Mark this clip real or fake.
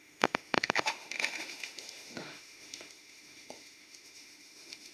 fake